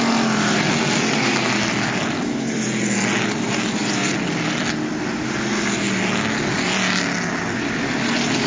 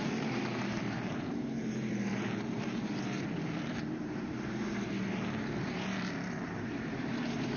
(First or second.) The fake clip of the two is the second